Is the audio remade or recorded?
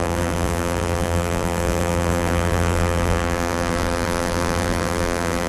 remade